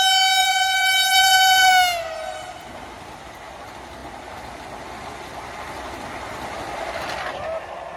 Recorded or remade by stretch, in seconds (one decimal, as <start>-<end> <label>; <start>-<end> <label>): 0.0-0.4 recorded; 0.4-1.7 remade; 1.7-8.0 recorded